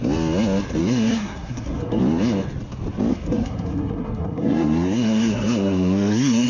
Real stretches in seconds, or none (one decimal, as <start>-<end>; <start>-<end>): 0.0-0.8; 2.0-3.1